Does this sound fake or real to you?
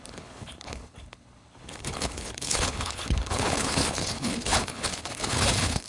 fake